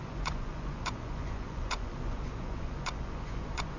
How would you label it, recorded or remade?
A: remade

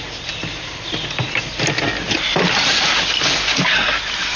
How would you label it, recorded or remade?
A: recorded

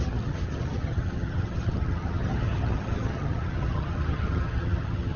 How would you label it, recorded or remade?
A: remade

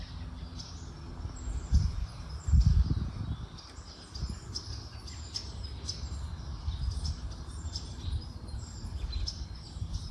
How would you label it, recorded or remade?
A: recorded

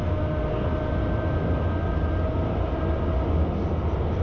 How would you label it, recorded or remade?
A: recorded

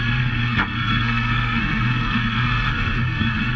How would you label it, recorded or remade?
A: remade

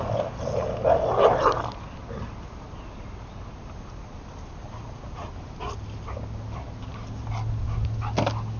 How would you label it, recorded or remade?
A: recorded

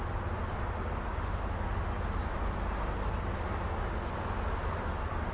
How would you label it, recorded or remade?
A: recorded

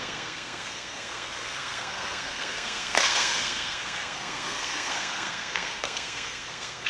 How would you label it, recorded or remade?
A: remade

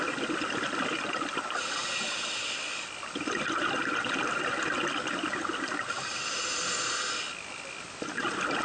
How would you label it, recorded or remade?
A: recorded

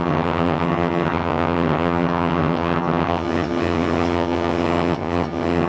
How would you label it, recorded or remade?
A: remade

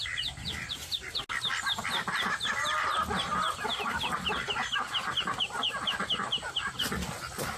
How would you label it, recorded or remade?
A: recorded